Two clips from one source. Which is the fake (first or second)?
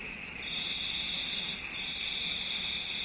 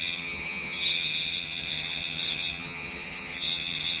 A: second